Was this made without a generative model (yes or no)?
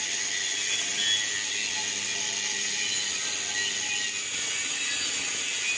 yes